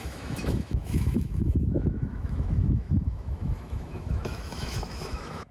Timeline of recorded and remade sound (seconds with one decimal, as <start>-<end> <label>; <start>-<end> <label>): 0.0-5.5 remade